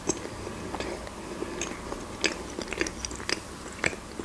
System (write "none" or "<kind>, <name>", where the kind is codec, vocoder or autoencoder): none